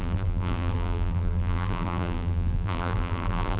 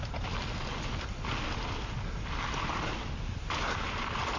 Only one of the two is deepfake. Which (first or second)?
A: first